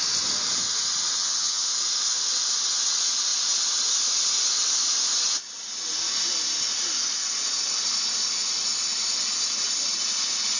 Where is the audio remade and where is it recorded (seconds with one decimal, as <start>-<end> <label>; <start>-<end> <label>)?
0.0-1.2 recorded; 1.2-1.7 remade; 1.7-10.6 recorded

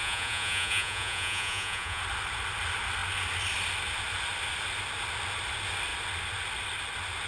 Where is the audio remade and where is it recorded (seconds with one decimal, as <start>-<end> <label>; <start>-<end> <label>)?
0.0-2.0 remade; 2.0-7.3 recorded

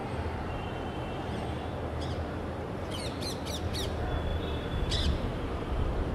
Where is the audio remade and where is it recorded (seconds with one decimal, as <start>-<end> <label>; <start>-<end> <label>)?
0.0-3.4 remade; 3.4-4.3 recorded; 4.3-6.1 remade

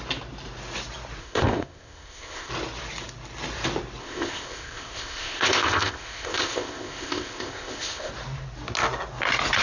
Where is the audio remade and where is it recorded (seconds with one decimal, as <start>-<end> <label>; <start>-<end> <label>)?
0.0-1.2 recorded; 1.2-2.5 remade; 2.5-4.0 recorded; 4.0-8.1 remade; 8.1-9.6 recorded

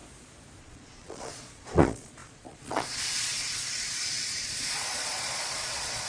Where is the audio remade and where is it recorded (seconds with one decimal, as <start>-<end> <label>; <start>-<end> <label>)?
0.0-0.6 recorded; 0.6-6.1 remade

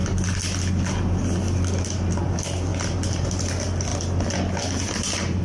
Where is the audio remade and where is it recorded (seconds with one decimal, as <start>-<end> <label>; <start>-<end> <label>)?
0.0-5.4 recorded

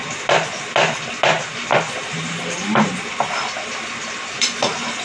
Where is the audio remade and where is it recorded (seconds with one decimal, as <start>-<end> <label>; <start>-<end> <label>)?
0.0-1.7 recorded; 1.7-2.8 remade; 2.8-5.0 recorded

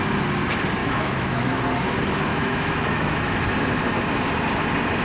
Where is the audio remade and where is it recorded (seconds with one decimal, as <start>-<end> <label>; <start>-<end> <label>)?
0.0-0.8 recorded; 0.8-1.6 remade; 1.6-2.3 recorded; 2.3-3.4 remade; 3.4-5.0 recorded